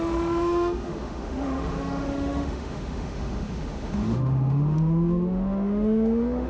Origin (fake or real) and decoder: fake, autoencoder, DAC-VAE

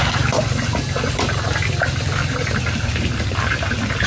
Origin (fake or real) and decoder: real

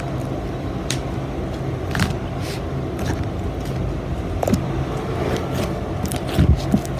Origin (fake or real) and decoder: real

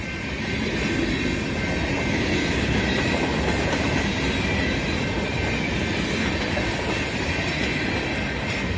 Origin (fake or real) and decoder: real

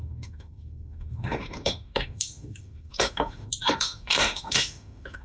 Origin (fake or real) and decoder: fake, autoencoder, DAC-VAE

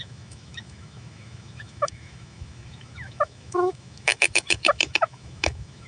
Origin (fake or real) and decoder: fake, autoencoder, DAC-VAE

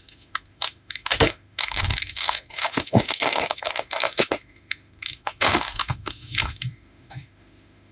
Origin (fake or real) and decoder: fake, autoencoder, DAC-VAE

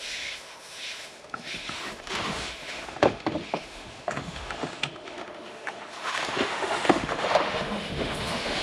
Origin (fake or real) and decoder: fake, autoencoder, DAC-VAE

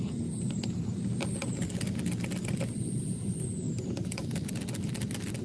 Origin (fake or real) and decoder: real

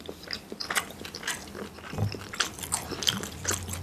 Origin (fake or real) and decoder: real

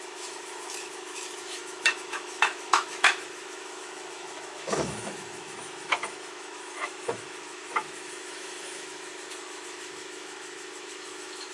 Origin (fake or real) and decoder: fake, autoencoder, DAC-VAE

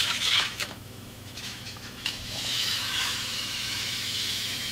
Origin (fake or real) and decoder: fake, autoencoder, DAC-VAE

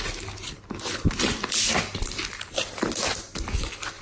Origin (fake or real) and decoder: real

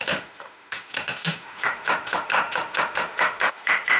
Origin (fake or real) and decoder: fake, autoencoder, DAC-VAE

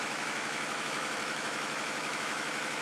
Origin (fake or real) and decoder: fake, autoencoder, DAC-VAE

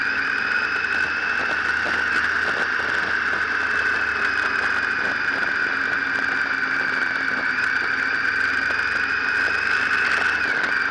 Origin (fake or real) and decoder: real